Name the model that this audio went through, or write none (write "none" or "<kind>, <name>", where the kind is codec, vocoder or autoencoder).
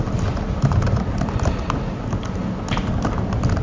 none